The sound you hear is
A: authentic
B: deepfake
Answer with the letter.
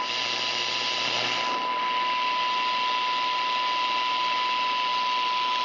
A